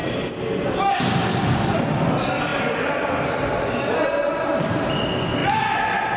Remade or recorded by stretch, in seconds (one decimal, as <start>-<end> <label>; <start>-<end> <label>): 0.0-6.2 recorded